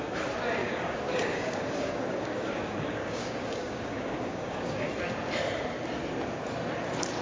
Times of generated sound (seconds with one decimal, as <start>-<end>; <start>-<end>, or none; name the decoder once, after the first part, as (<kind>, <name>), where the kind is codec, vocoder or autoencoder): 0.6-4.9 (codec, DAC)